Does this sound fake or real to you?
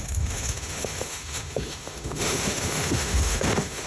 fake